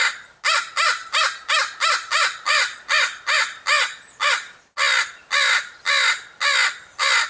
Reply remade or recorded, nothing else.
recorded